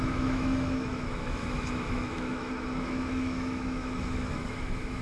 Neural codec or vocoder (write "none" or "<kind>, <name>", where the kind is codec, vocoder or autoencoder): autoencoder, DAC-VAE